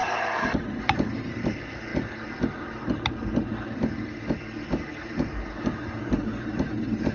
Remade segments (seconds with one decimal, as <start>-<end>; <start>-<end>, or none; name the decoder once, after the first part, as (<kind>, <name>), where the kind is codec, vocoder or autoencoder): 0.0-1.9 (vocoder, BigVGAN v2); 4.7-7.1